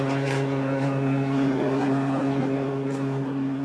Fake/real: fake